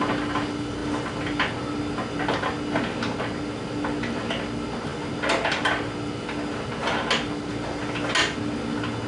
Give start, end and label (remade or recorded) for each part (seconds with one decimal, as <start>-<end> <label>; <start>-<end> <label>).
0.0-9.1 recorded